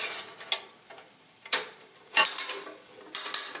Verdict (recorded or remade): recorded